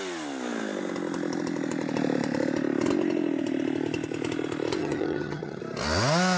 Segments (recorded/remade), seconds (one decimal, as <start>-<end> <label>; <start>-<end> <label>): 0.0-4.8 recorded; 4.8-5.6 remade; 5.6-6.4 recorded